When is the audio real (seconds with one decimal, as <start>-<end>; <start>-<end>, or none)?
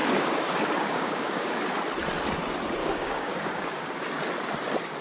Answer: 1.8-2.8; 3.9-5.0